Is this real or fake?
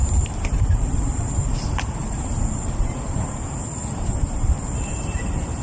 fake